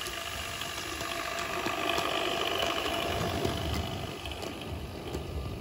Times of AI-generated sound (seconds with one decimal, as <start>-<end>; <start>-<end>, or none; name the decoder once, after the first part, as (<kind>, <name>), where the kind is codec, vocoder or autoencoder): 2.6-3.2 (autoencoder, DAC-VAE)

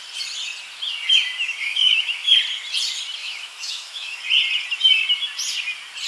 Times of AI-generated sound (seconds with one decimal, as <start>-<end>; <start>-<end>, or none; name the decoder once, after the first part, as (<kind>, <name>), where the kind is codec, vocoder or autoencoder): 1.6-2.3 (autoencoder, DAC-VAE); 3.2-4.2